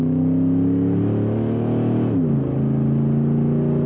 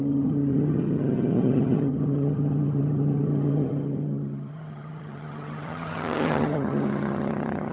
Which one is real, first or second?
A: first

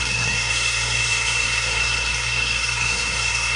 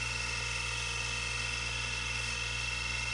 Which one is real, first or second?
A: second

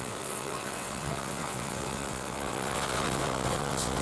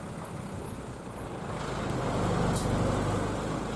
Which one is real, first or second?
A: second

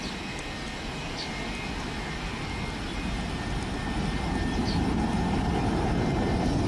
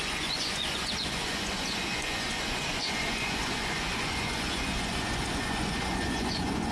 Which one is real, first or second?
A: first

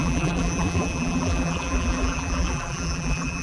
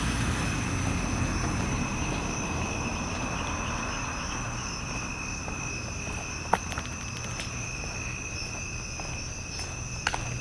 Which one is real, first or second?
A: second